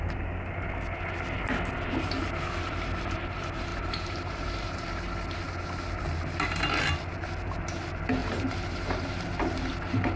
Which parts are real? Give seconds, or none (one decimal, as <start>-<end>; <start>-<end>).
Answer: 0.0-3.7; 4.9-8.2; 9.3-10.2